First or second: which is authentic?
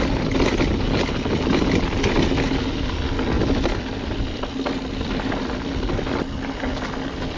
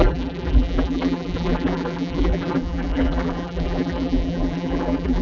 first